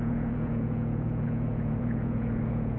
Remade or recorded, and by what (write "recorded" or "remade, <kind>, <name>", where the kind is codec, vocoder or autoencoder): remade, vocoder, Vocos